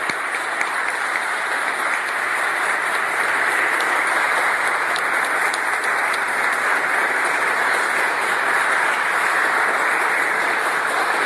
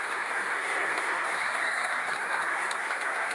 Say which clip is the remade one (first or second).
second